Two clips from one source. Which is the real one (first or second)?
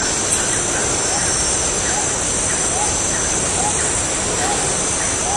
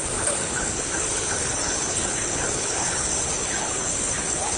first